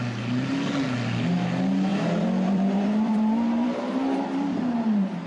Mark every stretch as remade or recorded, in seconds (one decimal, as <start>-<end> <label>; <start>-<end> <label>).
0.0-1.9 recorded; 1.9-5.3 remade